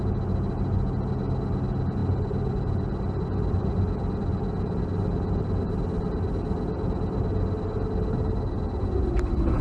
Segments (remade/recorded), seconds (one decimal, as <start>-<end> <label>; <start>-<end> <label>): 0.0-9.6 recorded